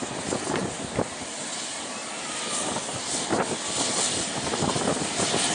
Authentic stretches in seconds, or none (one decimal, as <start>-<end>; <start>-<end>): 0.0-5.5